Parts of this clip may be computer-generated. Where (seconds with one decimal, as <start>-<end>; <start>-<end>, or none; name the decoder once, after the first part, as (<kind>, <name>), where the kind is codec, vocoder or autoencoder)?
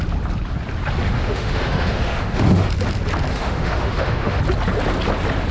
1.0-2.7 (autoencoder, DAC-VAE); 3.3-4.4